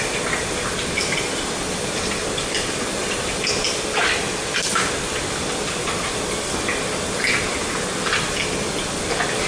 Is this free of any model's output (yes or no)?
yes